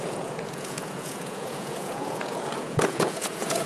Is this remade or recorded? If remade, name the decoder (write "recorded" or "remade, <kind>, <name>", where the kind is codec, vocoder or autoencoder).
remade, vocoder, Vocos